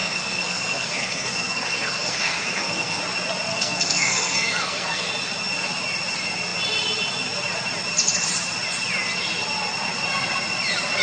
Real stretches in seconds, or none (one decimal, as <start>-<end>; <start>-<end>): 3.0-3.5; 5.1-11.0